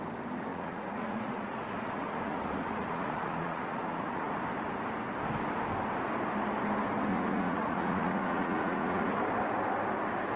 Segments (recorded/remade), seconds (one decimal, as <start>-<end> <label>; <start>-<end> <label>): 0.0-0.5 recorded; 0.5-4.4 remade; 4.4-7.1 recorded; 7.1-9.2 remade; 9.2-10.4 recorded